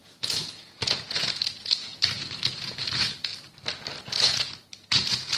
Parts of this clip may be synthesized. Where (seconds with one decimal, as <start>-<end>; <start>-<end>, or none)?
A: 0.0-3.3; 4.0-5.4